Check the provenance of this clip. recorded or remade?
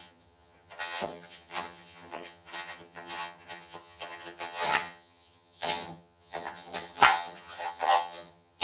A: remade